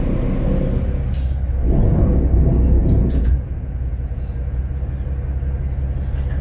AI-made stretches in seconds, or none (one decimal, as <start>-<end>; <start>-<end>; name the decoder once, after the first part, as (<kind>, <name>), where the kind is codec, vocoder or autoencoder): 2.8-4.6 (vocoder, Vocos)